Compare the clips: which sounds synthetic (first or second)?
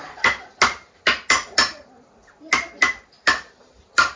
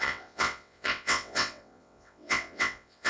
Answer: second